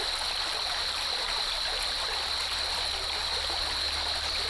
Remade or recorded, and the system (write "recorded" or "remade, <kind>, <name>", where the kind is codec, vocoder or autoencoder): recorded